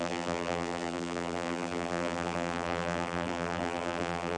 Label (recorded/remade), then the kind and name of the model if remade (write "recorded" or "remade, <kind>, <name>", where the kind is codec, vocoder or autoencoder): remade, vocoder, BigVGAN v2